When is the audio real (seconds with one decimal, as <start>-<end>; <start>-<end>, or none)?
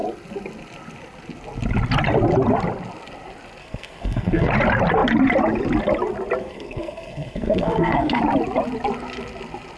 0.0-3.6; 4.5-6.4; 8.2-9.8